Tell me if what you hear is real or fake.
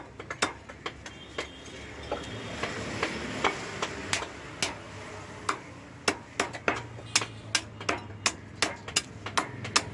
real